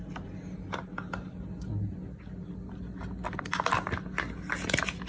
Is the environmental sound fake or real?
real